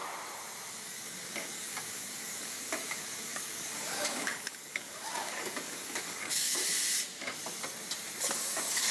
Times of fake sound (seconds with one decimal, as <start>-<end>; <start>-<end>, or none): 0.7-6.6; 8.4-8.9